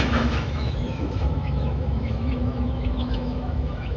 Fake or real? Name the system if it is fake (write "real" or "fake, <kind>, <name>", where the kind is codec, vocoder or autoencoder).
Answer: fake, autoencoder, DAC-VAE